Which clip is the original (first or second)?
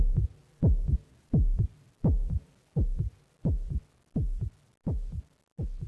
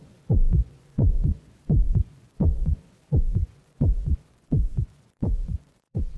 first